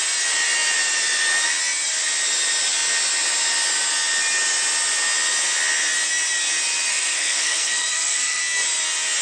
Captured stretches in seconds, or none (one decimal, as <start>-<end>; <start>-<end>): 0.0-6.9; 8.4-9.2